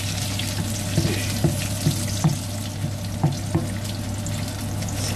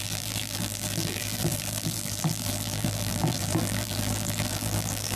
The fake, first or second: second